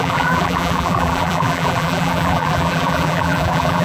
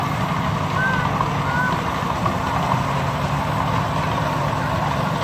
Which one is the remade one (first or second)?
first